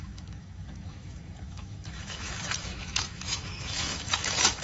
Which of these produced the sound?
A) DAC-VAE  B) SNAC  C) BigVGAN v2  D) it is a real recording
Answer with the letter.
A